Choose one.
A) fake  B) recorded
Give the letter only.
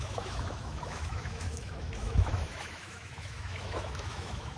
A